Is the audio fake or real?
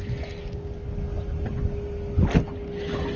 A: real